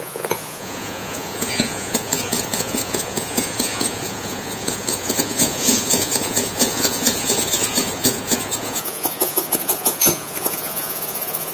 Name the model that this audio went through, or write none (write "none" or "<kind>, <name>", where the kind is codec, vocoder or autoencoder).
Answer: vocoder, Vocos